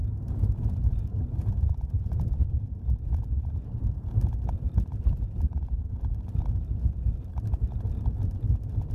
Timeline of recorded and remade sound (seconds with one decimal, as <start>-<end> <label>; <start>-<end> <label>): 0.0-4.1 remade; 4.1-8.9 recorded